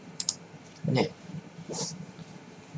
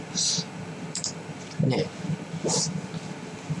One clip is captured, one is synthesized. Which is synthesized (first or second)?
first